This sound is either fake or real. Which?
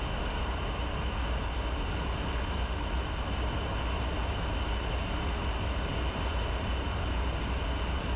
real